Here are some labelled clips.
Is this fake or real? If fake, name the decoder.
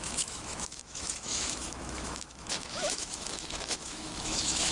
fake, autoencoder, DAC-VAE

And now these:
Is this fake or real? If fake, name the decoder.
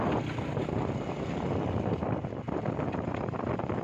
real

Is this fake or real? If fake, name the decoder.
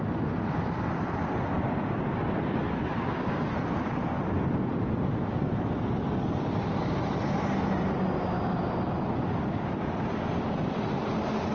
real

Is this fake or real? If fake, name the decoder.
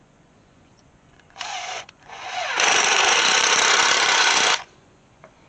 fake, vocoder, Vocos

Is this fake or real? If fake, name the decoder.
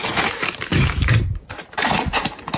fake, vocoder, BigVGAN v2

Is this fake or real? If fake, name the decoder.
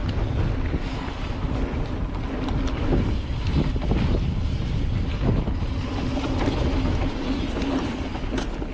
real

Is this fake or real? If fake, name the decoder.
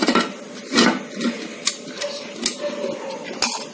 real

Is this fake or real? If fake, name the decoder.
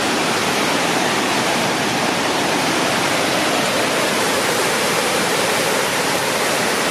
fake, vocoder, BigVGAN v2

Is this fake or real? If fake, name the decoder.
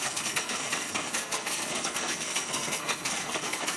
fake, codec, SNAC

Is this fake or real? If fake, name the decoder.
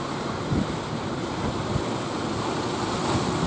real